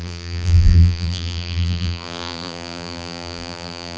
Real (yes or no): no